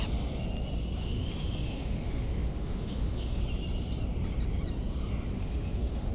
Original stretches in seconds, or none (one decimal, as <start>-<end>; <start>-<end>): 0.0-1.0; 3.4-5.3